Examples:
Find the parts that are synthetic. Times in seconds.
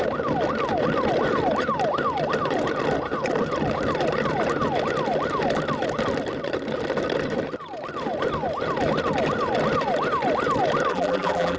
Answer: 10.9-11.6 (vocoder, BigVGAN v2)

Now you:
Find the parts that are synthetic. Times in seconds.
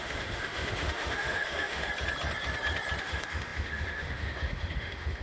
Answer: 0.0-1.9 (autoencoder, DAC-VAE); 3.0-5.2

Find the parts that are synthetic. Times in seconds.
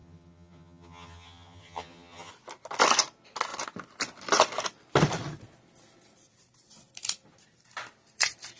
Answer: 0.0-2.3 (vocoder, HiFi-GAN)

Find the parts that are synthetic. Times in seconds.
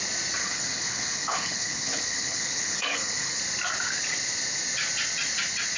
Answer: 0.4-3.4 (codec, HILCodec)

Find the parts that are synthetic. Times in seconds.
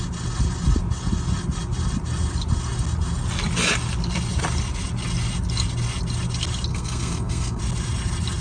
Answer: 6.7-7.6 (codec, SNAC)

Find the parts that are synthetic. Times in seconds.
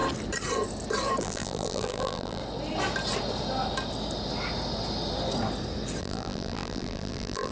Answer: 1.2-2.4 (vocoder, BigVGAN v2); 6.0-7.5